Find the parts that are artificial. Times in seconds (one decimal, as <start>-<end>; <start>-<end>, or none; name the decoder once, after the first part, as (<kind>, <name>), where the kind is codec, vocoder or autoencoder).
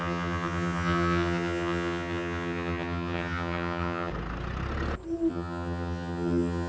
0.0-4.1 (vocoder, HiFi-GAN); 5.3-6.7